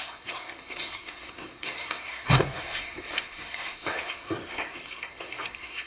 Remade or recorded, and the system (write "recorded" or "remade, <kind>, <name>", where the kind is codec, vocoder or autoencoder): remade, codec, SNAC